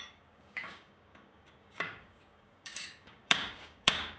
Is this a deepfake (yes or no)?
yes